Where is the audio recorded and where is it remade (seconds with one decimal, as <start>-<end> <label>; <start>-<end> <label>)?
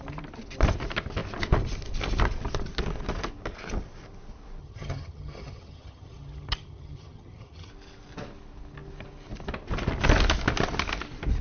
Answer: 0.0-4.6 recorded; 4.6-7.7 remade; 7.7-11.4 recorded